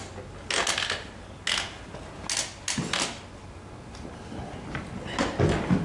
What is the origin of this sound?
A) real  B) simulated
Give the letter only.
A